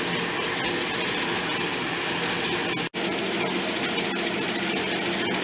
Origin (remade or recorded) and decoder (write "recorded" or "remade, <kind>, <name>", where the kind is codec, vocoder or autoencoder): recorded